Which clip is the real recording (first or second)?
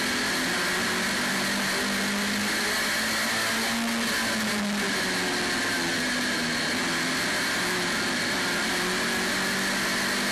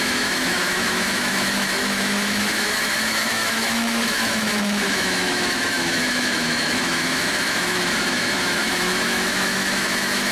first